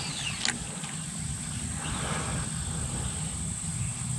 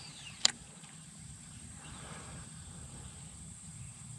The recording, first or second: first